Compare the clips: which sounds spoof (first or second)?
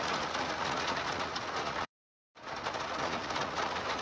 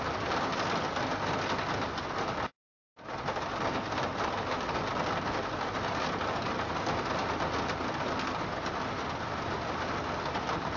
first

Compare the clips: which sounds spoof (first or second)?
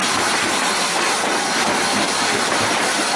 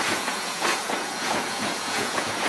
second